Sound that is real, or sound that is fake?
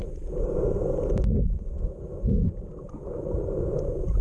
real